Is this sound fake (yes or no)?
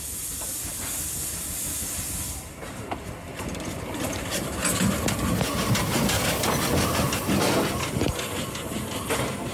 no